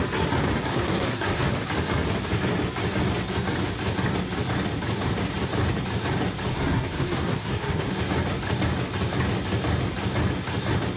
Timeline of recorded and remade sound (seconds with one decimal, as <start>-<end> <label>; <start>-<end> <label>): 0.0-0.7 recorded; 0.7-1.4 remade; 1.4-6.5 recorded; 6.5-7.9 remade; 7.9-11.0 recorded